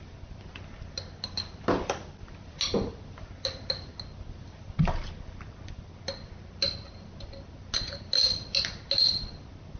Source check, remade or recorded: recorded